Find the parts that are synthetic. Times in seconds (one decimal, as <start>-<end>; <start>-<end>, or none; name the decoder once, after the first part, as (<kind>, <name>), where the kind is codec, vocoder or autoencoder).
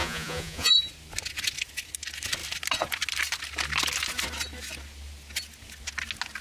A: 0.0-0.7 (vocoder, Vocos)